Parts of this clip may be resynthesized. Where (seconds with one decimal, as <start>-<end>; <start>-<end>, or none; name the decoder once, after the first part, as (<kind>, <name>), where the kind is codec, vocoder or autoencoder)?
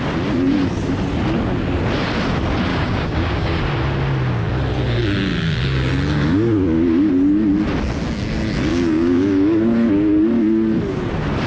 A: 2.7-3.6 (codec, DAC); 8.7-9.6